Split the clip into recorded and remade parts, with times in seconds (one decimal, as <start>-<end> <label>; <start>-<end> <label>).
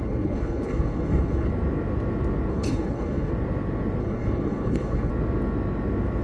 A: 0.0-1.5 remade; 1.5-2.5 recorded; 2.5-3.3 remade; 3.3-4.0 recorded; 4.0-5.1 remade; 5.1-6.2 recorded